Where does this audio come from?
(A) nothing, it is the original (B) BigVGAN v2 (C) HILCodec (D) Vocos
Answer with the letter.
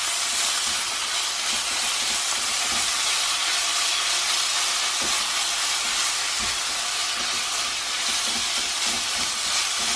A